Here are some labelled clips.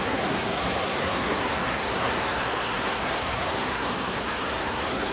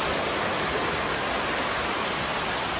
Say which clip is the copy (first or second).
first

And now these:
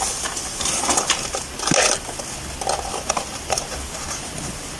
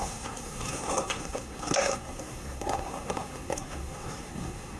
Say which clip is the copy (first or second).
second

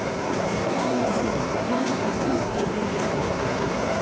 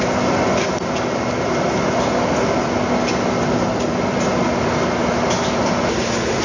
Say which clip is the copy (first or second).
first